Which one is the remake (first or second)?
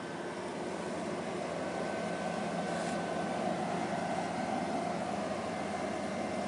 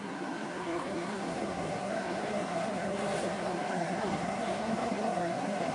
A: second